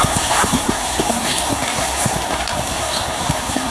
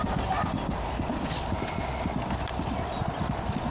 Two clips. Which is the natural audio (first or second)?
second